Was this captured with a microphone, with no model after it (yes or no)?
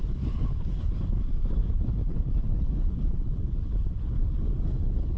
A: no